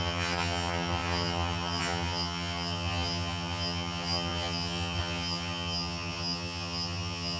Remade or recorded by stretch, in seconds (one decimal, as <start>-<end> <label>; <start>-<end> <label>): 0.0-7.4 remade